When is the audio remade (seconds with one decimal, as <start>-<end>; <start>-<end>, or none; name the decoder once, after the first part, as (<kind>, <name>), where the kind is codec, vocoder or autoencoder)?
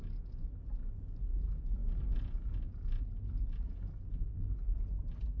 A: none